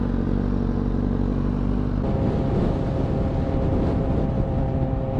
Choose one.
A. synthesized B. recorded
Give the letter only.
B